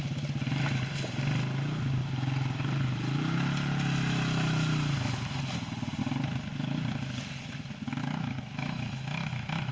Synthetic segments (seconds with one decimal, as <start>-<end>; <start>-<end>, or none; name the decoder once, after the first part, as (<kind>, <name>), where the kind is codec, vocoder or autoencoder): 8.0-9.7 (autoencoder, DAC-VAE)